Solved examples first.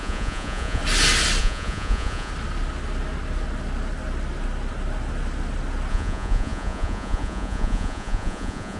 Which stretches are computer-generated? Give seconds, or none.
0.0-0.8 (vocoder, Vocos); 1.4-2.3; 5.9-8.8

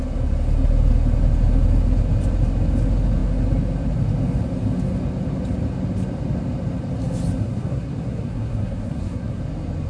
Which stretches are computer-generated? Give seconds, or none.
7.4-9.4 (codec, SNAC)

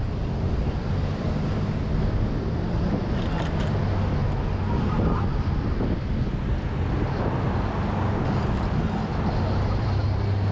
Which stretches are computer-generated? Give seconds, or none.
none

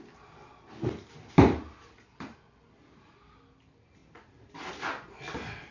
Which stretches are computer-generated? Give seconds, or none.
none

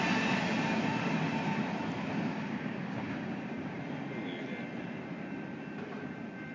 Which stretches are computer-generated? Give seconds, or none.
2.3-3.8 (codec, DAC)